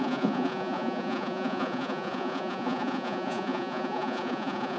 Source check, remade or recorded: remade